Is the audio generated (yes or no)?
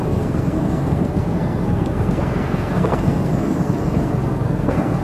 yes